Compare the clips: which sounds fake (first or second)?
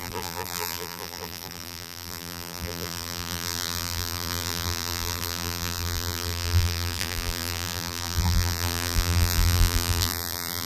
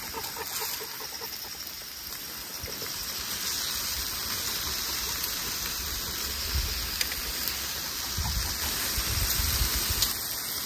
first